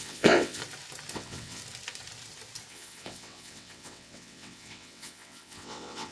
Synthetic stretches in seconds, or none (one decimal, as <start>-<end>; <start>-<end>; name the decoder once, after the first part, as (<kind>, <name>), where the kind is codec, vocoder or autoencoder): 0.0-0.6 (vocoder, WaveNeXt); 1.1-1.6; 2.7-6.1